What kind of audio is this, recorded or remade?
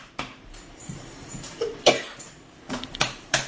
remade